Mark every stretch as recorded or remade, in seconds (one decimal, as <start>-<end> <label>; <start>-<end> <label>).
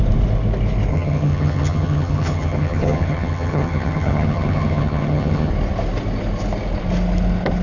0.0-0.9 recorded; 0.9-5.5 remade; 5.5-7.6 recorded